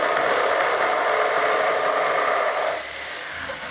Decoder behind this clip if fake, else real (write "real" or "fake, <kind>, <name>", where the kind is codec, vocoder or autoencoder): real